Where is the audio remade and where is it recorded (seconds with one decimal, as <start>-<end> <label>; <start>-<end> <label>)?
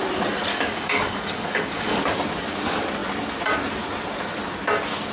0.0-0.5 recorded; 0.5-2.0 remade; 2.0-5.1 recorded